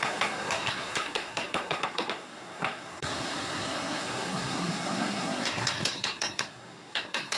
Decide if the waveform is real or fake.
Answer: fake